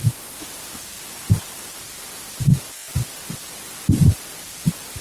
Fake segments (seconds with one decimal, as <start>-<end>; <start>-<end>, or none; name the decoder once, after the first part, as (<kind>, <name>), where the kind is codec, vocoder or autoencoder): 1.7-2.9 (vocoder, BigVGAN v2); 4.2-5.0